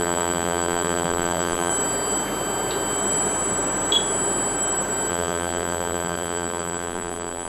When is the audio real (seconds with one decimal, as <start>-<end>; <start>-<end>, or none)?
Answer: 1.7-5.1